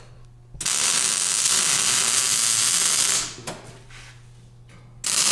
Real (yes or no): yes